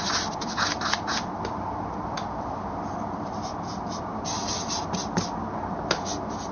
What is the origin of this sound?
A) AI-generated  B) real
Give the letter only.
A